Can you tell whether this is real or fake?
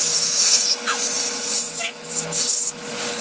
fake